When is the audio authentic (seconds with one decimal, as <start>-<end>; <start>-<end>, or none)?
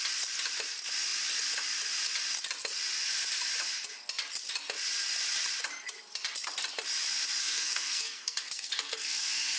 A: 0.0-7.4